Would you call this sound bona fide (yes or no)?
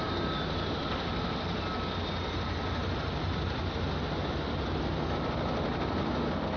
yes